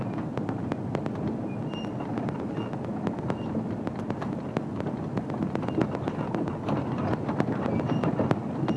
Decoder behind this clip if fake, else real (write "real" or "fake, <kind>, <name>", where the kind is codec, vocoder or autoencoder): real